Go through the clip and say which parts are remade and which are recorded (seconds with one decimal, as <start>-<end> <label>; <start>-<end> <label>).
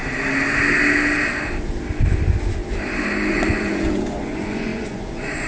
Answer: 0.0-3.3 recorded; 3.3-5.5 remade